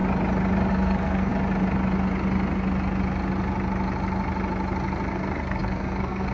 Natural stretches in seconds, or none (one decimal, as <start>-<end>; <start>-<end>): 0.0-0.7; 1.3-5.1